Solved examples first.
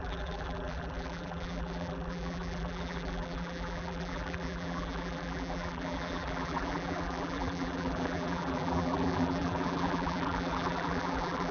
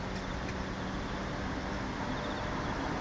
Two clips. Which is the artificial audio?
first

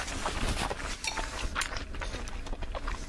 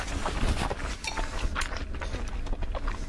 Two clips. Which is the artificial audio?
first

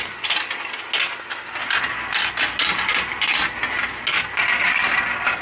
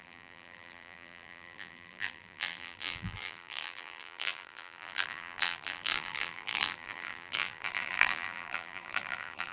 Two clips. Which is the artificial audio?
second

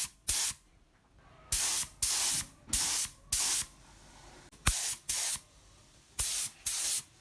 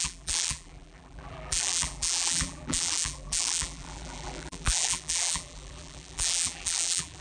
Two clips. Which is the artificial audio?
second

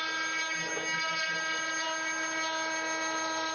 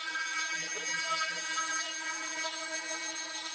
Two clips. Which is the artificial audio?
second